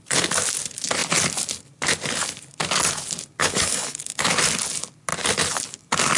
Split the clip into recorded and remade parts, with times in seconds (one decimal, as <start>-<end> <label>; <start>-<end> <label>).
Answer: 0.0-3.4 recorded; 3.4-4.0 remade; 4.0-6.2 recorded

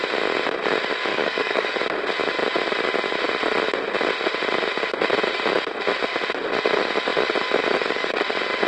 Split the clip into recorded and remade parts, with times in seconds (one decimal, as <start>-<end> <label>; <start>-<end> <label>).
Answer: 0.0-1.1 recorded; 1.1-1.8 remade; 1.8-8.7 recorded

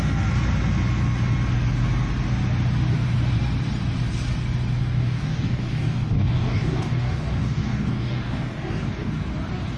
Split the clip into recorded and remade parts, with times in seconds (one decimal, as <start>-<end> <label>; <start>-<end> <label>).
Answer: 0.0-4.8 recorded; 4.8-9.2 remade; 9.2-9.8 recorded

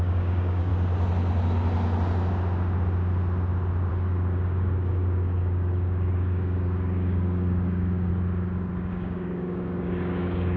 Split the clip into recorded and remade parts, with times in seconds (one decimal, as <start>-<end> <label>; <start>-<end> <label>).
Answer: 0.0-0.7 remade; 0.7-3.9 recorded; 3.9-8.1 remade; 8.1-8.9 recorded; 8.9-10.6 remade